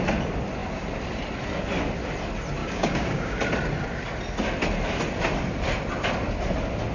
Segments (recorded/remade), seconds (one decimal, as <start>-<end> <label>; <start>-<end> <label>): 0.0-2.6 recorded; 2.6-3.4 remade; 3.4-6.9 recorded

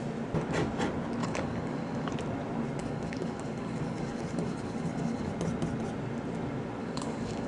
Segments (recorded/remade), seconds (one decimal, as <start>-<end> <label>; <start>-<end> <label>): 0.0-1.2 recorded; 1.2-2.1 remade; 2.1-2.8 recorded; 2.8-5.3 remade; 5.3-6.8 recorded; 6.8-7.5 remade